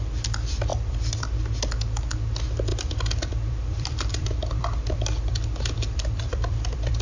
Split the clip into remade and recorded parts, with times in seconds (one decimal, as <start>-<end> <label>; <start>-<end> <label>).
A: 0.0-0.7 recorded; 0.7-1.3 remade; 1.3-2.7 recorded; 2.7-7.0 remade